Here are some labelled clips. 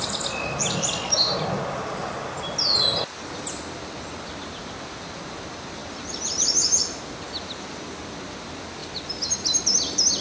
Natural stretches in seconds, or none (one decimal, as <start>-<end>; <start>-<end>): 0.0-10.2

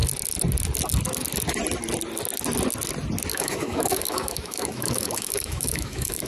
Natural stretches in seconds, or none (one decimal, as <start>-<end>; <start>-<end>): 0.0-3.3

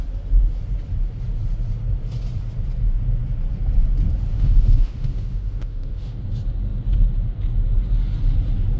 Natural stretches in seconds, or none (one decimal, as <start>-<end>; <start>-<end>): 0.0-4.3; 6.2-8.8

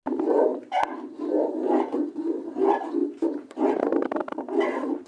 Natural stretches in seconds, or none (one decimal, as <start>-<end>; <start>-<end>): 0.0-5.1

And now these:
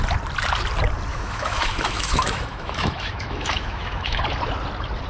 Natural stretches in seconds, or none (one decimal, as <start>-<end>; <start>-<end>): 0.0-1.1; 4.2-5.1

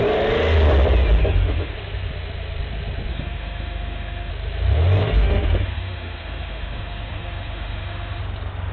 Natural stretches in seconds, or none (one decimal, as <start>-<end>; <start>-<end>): 0.0-1.2; 1.7-3.1; 4.3-5.0; 8.2-8.7

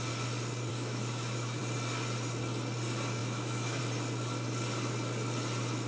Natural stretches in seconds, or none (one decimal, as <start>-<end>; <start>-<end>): 0.0-0.7; 1.6-3.2; 3.8-5.9